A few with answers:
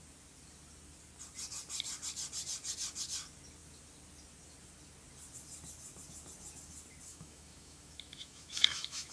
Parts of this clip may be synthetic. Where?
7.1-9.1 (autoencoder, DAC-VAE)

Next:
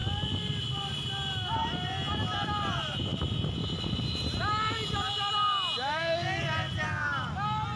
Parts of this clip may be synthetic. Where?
none

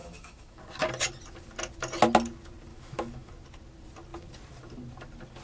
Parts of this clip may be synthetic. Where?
0.0-0.6 (autoencoder, DAC-VAE); 2.7-3.3

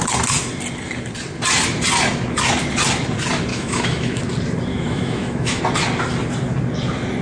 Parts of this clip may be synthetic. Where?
3.5-4.2 (autoencoder, DAC-VAE); 4.7-5.6